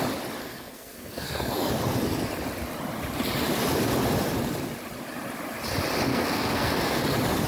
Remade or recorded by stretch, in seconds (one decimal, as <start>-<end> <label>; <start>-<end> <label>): 0.0-0.4 recorded; 0.4-1.7 remade; 1.7-6.1 recorded; 6.1-7.0 remade; 7.0-7.5 recorded